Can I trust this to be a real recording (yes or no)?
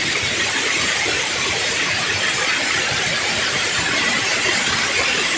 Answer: no